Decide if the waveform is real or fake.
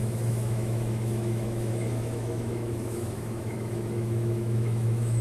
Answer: fake